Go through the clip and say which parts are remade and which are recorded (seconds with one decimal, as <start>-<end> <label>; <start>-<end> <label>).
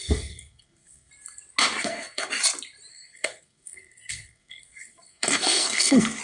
0.0-1.1 remade; 1.1-1.8 recorded; 1.8-2.3 remade; 2.3-2.9 recorded; 2.9-6.2 remade